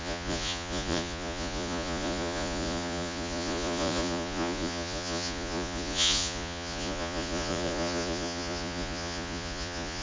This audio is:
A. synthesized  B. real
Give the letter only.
A